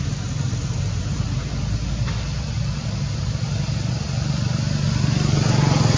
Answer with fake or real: real